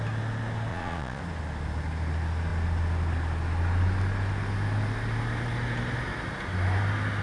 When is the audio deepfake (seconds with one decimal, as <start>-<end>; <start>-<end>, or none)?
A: 0.7-1.2